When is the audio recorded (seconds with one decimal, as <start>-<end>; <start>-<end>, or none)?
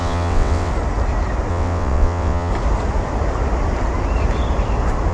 0.7-1.5; 2.5-5.1